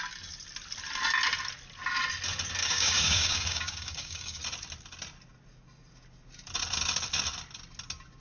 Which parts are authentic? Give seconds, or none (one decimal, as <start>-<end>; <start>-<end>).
0.0-2.6; 4.4-8.2